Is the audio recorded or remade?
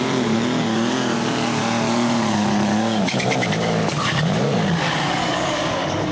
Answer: remade